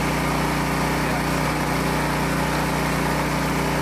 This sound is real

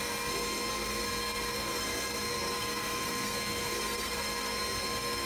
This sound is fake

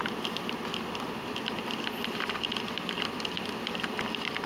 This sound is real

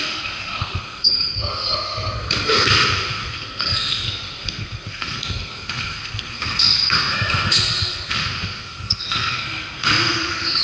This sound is fake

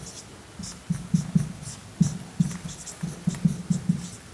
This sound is real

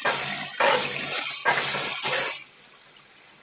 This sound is real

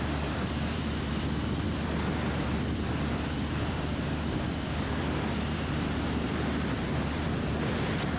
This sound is fake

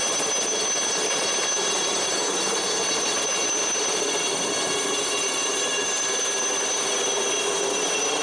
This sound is real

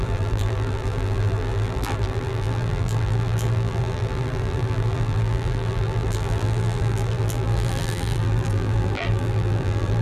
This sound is fake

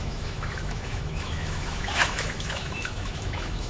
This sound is fake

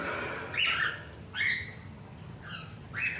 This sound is real